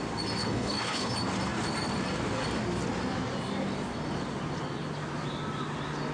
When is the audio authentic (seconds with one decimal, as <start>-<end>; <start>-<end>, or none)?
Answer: 0.0-0.4; 1.1-6.1